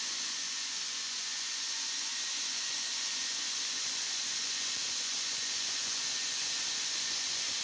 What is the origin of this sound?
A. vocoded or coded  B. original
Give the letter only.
A